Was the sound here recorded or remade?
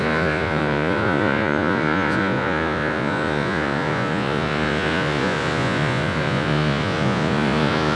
remade